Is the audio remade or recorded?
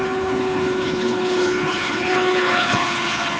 remade